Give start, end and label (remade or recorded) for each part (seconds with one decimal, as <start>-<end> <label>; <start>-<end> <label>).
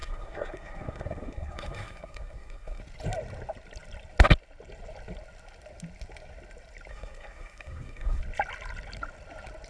0.0-2.8 remade; 2.8-6.9 recorded; 6.9-8.2 remade; 8.2-9.7 recorded